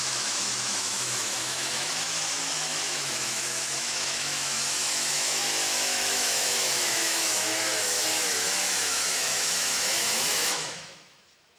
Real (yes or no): no